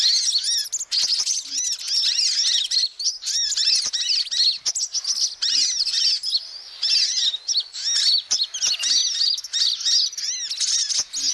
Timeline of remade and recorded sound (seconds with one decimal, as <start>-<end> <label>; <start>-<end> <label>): 0.0-11.3 recorded